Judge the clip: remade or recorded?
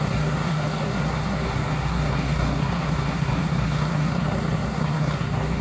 remade